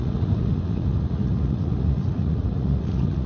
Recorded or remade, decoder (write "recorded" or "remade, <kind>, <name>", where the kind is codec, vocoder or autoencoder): remade, vocoder, Vocos